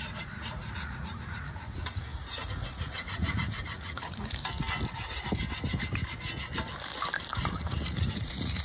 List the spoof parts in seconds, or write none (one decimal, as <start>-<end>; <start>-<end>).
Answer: 0.0-4.2; 7.3-8.6